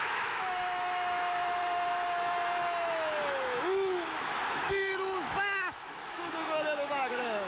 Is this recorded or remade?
remade